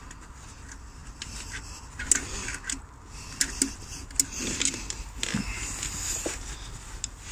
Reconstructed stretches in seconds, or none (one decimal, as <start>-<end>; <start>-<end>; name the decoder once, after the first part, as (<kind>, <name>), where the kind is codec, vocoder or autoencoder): none